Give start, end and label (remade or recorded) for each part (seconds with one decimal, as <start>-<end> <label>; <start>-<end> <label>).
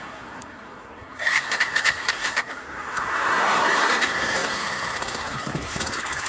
0.0-6.3 remade